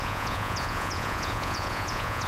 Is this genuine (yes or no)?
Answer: no